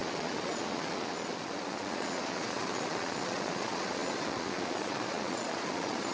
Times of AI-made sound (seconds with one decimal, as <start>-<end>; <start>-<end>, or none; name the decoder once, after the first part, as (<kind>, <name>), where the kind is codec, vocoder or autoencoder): 0.0-6.1 (vocoder, Vocos)